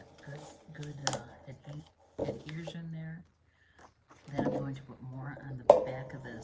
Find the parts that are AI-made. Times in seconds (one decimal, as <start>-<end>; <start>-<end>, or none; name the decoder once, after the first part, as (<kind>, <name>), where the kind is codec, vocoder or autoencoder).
none